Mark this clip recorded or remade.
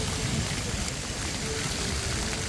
recorded